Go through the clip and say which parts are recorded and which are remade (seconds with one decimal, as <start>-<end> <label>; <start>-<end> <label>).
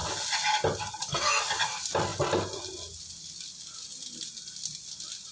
0.0-5.3 recorded